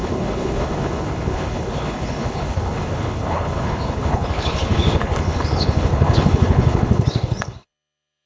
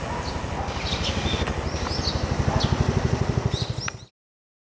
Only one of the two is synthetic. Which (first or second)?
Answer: first